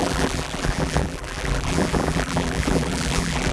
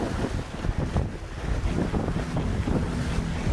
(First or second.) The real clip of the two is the second